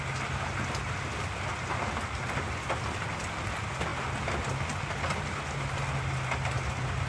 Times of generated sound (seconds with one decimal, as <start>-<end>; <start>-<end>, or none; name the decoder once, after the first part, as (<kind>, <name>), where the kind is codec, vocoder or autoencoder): none